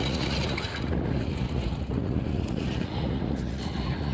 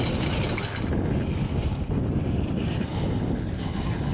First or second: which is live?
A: second